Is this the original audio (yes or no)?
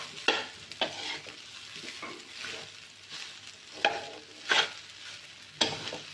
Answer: yes